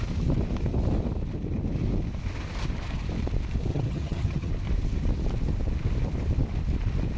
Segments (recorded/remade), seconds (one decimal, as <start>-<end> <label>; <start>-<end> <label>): 0.0-3.7 recorded; 3.7-4.5 remade; 4.5-7.2 recorded